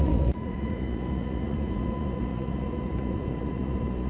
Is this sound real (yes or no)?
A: no